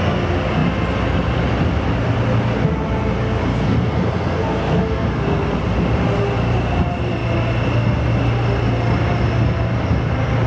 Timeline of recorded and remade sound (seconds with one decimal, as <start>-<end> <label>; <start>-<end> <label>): 0.0-3.5 recorded; 3.5-5.5 remade; 5.5-10.5 recorded

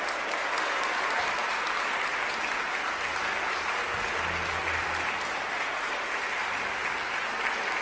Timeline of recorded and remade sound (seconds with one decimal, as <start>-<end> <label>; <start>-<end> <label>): 0.0-7.8 recorded

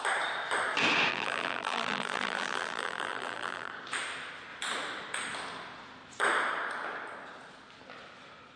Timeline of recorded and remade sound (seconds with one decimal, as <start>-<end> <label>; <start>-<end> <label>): 0.0-1.1 recorded; 1.1-3.7 remade; 3.7-8.6 recorded

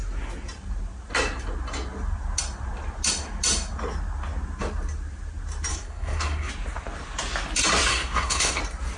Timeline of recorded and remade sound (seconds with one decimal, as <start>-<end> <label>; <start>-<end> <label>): 0.0-5.7 recorded; 5.7-6.5 remade; 6.5-7.9 recorded; 7.9-8.6 remade; 8.6-9.0 recorded

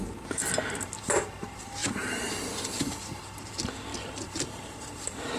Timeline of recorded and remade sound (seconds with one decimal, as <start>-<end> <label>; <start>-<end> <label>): 0.0-1.8 recorded; 1.8-2.3 remade; 2.3-3.9 recorded; 3.9-5.4 remade

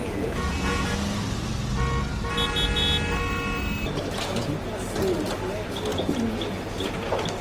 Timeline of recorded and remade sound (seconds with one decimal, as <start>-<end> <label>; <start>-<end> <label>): 0.0-0.9 remade; 0.9-7.4 recorded